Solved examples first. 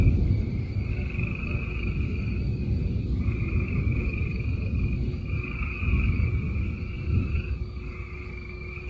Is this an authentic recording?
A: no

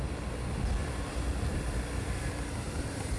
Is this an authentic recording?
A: yes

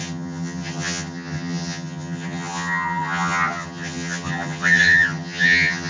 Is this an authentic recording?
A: no